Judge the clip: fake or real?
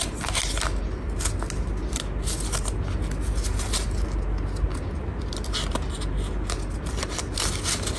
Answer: real